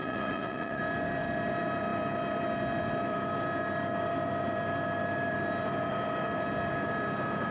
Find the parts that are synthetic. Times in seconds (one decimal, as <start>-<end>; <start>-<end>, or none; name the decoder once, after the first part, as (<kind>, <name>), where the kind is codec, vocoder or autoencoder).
0.0-0.8 (vocoder, Vocos)

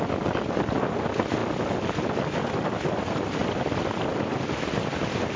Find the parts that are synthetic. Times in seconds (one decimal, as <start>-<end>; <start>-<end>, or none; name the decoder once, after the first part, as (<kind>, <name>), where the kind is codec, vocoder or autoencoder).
none

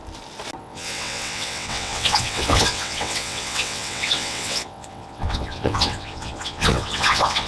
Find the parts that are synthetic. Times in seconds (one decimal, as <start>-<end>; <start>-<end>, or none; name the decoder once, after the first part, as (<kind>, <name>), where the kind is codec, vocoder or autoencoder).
0.6-7.5 (vocoder, WaveNeXt)

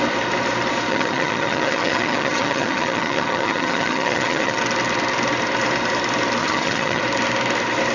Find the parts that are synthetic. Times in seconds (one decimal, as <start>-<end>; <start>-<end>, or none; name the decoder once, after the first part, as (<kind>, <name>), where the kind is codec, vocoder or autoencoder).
0.9-4.6 (vocoder, HiFi-GAN); 6.4-7.0

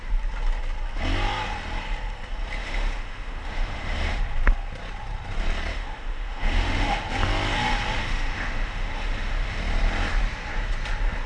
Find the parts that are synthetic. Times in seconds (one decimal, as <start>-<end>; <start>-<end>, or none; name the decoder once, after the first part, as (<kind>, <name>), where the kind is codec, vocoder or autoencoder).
2.6-4.2 (autoencoder, DAC-VAE); 5.7-7.1; 8.0-9.6

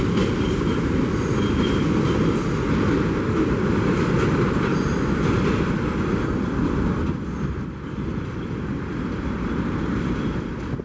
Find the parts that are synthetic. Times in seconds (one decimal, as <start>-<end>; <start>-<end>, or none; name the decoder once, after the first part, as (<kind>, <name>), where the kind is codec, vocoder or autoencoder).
none

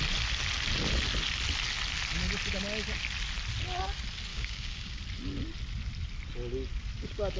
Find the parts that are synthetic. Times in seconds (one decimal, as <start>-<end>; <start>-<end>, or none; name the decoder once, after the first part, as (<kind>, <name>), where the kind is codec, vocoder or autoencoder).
4.3-5.0 (codec, DAC)